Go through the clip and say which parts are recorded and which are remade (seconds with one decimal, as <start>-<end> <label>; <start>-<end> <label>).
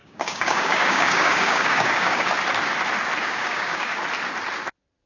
0.0-2.3 remade; 2.3-3.2 recorded; 3.2-4.0 remade; 4.0-5.1 recorded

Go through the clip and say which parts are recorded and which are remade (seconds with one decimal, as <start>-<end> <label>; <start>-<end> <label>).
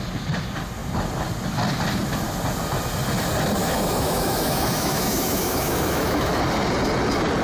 0.0-3.6 recorded; 3.6-6.4 remade; 6.4-7.4 recorded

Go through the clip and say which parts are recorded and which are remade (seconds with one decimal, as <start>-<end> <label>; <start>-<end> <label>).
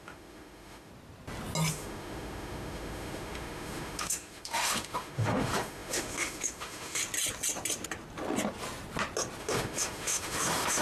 0.0-0.9 remade; 0.9-1.7 recorded; 1.7-7.0 remade; 7.0-9.4 recorded; 9.4-10.8 remade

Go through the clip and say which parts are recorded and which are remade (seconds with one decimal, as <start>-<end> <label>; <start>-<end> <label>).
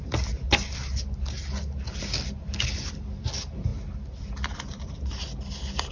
0.0-3.7 recorded; 3.7-4.9 remade; 4.9-5.9 recorded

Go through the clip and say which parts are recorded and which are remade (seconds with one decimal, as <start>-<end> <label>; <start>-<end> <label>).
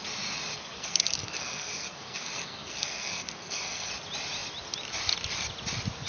0.0-0.6 recorded; 0.6-3.9 remade; 3.9-6.1 recorded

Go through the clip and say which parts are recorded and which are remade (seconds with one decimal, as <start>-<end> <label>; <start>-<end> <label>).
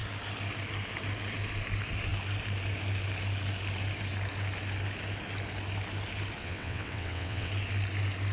0.0-6.4 recorded; 6.4-7.5 remade; 7.5-8.3 recorded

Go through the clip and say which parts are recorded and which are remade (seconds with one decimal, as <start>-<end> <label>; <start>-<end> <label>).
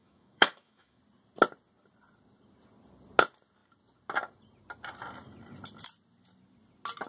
0.0-1.0 remade; 1.0-7.1 recorded